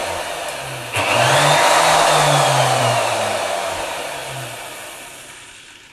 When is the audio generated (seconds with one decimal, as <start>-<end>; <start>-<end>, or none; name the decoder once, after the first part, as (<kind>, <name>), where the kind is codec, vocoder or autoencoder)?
2.8-4.2 (vocoder, BigVGAN v2)